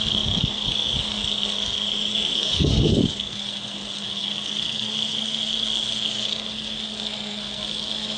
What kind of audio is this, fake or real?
fake